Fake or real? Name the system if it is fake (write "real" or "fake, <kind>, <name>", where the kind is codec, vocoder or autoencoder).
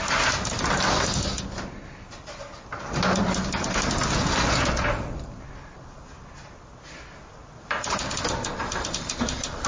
real